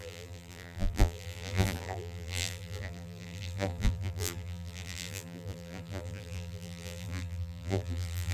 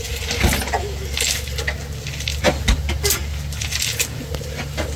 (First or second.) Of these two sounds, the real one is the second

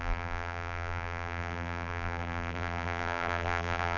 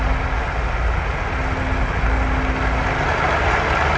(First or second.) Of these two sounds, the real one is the second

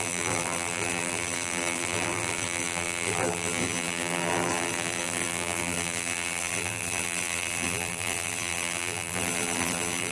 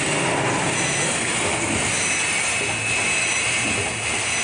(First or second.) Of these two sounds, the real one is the second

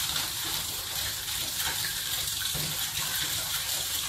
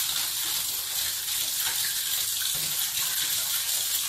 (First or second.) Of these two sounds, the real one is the second